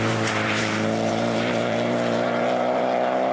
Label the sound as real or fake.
fake